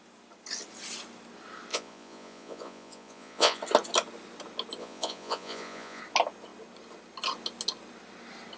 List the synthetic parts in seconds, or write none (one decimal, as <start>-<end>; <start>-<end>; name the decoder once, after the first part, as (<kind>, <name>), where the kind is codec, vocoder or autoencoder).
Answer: 1.7-3.6 (vocoder, Vocos); 4.8-6.0